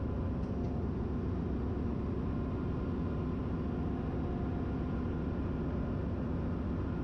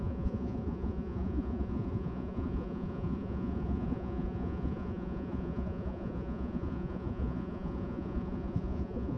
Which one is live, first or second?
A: first